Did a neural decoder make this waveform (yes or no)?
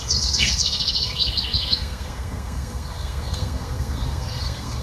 yes